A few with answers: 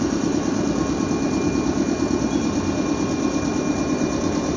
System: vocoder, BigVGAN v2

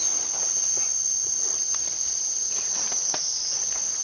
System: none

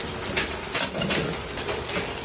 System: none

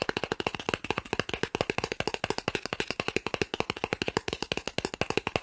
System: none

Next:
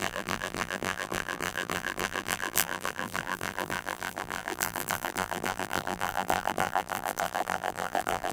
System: vocoder, BigVGAN v2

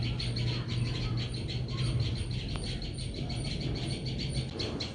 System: none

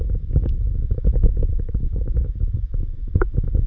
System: autoencoder, DAC-VAE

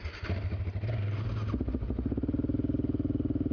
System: none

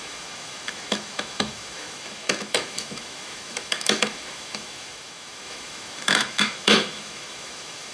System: autoencoder, DAC-VAE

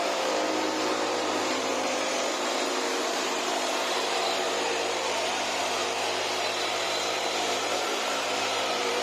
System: vocoder, BigVGAN v2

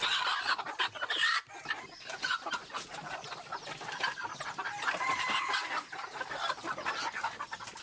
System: none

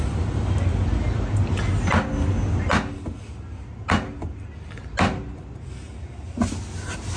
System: none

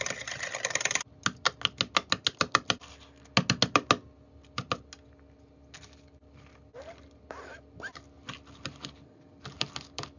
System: none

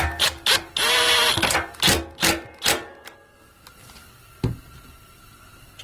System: none